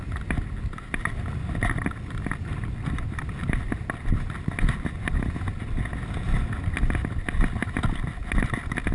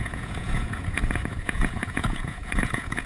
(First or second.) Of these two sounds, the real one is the first